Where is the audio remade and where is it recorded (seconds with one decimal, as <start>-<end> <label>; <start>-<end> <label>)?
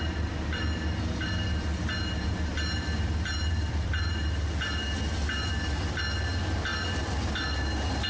0.0-2.5 recorded; 2.5-4.1 remade; 4.1-8.1 recorded